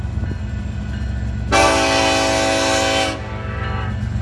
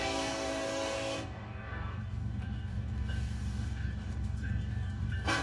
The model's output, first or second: second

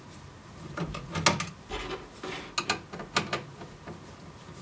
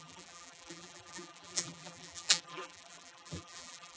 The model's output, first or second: second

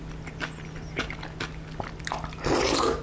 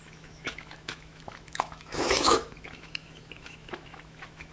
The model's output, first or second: second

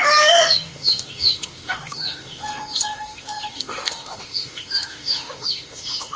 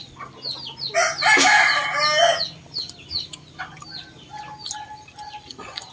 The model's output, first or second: first